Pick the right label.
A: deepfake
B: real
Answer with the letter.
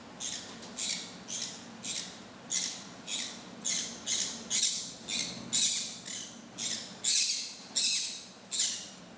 B